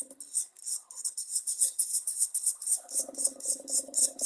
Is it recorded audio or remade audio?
remade